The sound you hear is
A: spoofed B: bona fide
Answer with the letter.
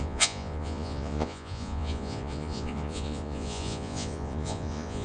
A